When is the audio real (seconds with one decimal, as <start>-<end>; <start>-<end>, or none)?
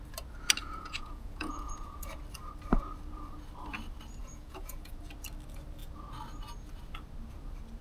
0.0-0.6; 2.2-4.2; 5.0-7.8